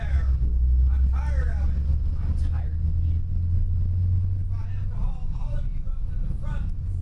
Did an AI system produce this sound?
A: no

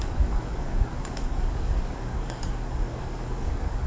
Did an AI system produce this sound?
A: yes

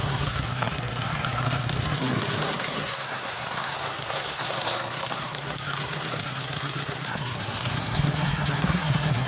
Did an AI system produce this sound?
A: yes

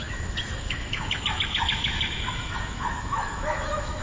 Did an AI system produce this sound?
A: yes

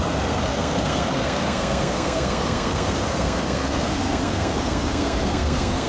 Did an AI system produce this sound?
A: yes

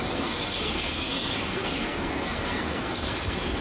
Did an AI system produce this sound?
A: yes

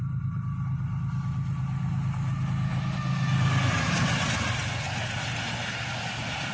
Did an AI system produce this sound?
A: no